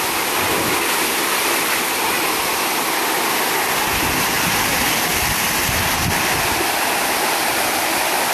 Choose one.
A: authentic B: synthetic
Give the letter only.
A